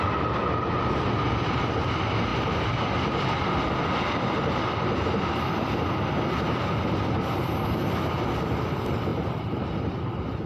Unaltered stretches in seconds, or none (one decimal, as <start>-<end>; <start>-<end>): 0.0-9.1; 9.9-10.5